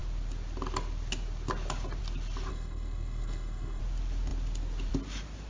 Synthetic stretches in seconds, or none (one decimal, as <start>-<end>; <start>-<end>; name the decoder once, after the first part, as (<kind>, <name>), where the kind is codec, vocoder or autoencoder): 2.5-3.8 (codec, SNAC)